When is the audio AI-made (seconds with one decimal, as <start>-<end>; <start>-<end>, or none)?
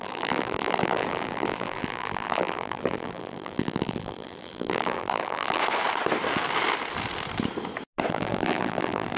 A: 0.0-5.6; 8.1-9.2